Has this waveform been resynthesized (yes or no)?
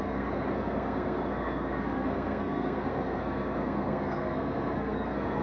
yes